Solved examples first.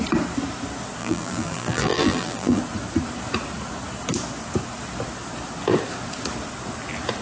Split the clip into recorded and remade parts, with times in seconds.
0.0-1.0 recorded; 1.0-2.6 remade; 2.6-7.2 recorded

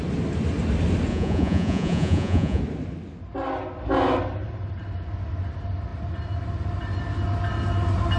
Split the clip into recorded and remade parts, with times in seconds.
0.0-1.1 recorded; 1.1-2.6 remade; 2.6-8.2 recorded

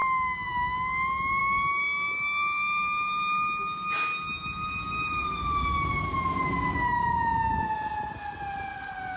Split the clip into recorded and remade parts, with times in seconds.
0.0-9.2 recorded

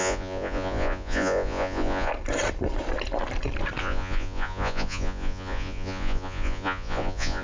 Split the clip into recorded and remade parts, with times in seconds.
0.0-2.1 remade; 2.1-3.8 recorded; 3.8-7.4 remade

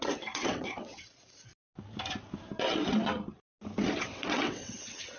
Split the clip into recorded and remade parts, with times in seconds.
0.0-1.5 remade; 1.5-4.0 recorded; 4.0-5.2 remade

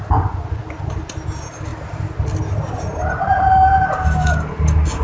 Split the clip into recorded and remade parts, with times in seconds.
0.0-5.0 recorded

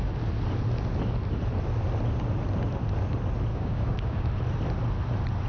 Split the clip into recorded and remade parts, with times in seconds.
0.0-3.5 recorded; 3.5-4.3 remade; 4.3-5.5 recorded